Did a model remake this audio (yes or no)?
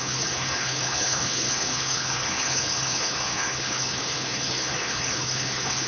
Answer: yes